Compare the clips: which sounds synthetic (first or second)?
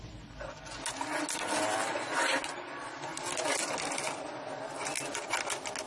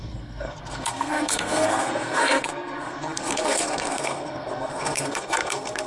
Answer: second